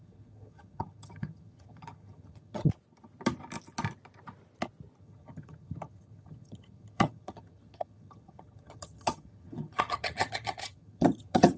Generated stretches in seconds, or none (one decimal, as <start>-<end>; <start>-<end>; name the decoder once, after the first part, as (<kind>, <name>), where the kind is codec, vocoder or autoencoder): 0.0-2.7 (vocoder, HiFi-GAN); 5.0-11.6

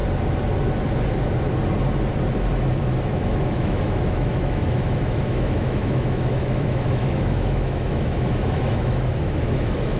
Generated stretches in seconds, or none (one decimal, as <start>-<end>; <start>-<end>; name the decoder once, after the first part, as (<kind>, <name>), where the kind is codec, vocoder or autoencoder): 2.7-10.0 (autoencoder, DAC-VAE)

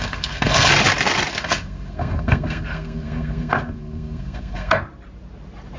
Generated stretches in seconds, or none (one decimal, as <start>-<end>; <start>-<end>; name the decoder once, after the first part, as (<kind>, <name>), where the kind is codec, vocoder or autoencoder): 0.0-0.7 (codec, SNAC); 1.3-4.8

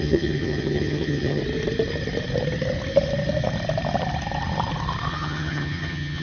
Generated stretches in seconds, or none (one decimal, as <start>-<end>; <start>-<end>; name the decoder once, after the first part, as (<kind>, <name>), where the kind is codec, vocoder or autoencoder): 0.0-1.4 (vocoder, HiFi-GAN); 5.1-6.2

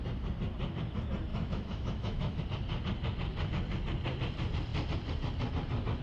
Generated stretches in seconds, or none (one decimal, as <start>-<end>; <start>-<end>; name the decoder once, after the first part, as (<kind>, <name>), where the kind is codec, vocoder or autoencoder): 1.3-2.4 (autoencoder, DAC-VAE)

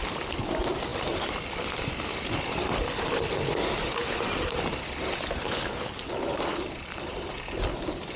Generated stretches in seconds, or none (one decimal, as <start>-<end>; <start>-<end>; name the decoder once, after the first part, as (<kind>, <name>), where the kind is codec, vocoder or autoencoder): none

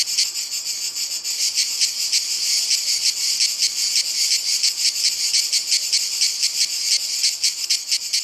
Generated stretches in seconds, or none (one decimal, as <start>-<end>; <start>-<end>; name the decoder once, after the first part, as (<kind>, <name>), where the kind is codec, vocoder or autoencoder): none

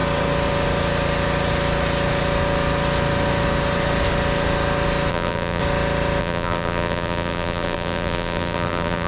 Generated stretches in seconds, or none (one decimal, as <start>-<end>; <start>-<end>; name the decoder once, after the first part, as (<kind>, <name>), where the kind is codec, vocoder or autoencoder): 5.1-5.6 (vocoder, BigVGAN v2); 6.2-9.1